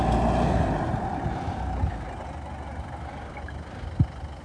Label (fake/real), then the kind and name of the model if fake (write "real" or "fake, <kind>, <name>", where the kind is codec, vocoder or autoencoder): real